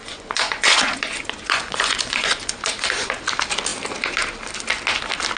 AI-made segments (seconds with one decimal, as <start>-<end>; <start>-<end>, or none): 0.0-3.2